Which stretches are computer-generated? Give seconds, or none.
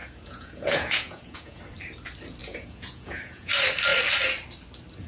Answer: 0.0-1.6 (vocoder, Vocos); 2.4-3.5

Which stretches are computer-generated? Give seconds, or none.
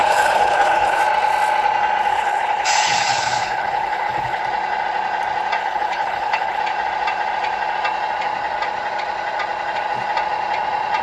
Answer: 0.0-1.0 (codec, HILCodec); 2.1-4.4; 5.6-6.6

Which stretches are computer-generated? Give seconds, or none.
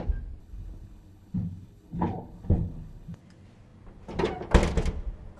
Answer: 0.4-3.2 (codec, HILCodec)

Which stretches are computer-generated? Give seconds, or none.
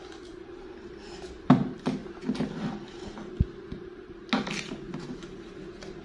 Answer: none